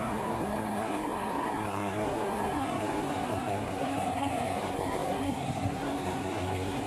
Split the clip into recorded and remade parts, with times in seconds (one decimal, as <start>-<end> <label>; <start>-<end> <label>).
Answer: 0.0-6.9 remade